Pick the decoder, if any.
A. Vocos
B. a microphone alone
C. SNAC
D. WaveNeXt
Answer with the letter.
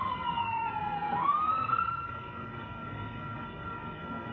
C